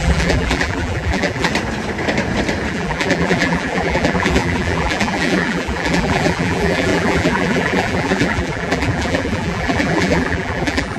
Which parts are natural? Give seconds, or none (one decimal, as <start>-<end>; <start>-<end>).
1.5-2.7